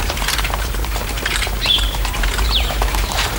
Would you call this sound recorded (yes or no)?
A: no